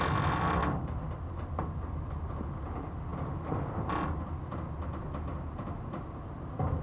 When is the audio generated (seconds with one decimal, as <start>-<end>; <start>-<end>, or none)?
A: none